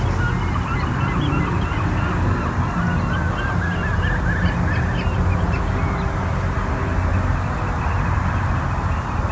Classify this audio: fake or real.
real